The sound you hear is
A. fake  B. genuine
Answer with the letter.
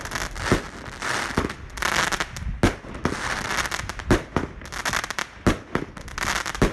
B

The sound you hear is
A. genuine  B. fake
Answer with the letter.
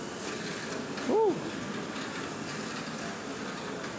A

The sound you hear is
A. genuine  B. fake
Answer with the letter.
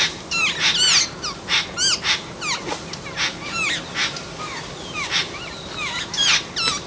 A